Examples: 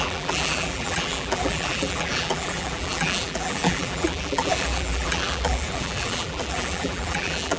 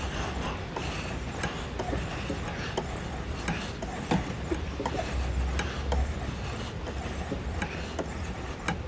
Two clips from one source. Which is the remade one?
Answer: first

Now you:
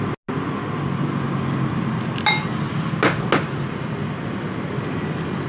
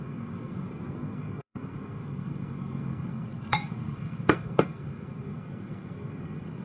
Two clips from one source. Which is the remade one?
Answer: second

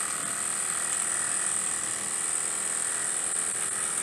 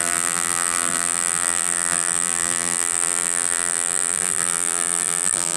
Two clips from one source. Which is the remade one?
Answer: second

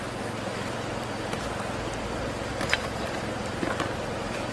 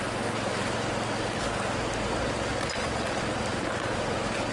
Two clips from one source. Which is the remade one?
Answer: first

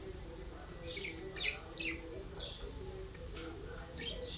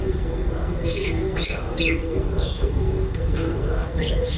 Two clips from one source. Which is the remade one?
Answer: second